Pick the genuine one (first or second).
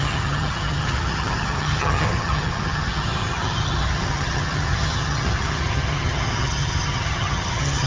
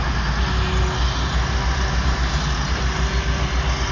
second